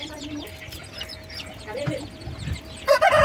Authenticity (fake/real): real